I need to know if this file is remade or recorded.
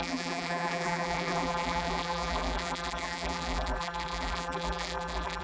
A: remade